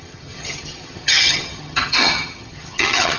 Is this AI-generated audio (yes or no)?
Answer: yes